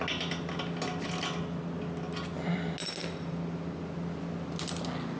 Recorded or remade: recorded